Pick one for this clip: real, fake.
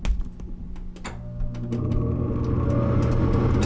real